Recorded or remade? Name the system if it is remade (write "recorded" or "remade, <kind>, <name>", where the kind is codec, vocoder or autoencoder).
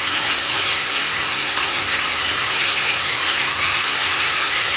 remade, codec, SNAC